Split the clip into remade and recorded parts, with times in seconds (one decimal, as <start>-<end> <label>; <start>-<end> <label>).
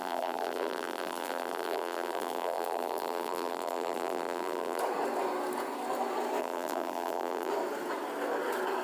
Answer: 0.0-4.8 remade; 4.8-6.4 recorded; 6.4-7.5 remade; 7.5-8.8 recorded